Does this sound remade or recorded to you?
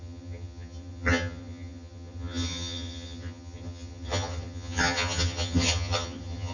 remade